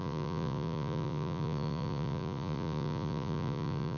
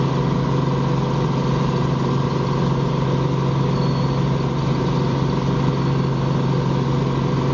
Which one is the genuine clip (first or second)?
second